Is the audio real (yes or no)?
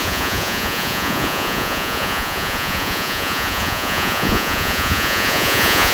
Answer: no